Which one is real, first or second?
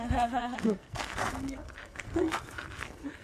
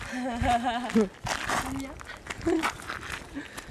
second